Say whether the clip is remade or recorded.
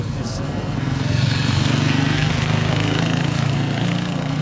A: remade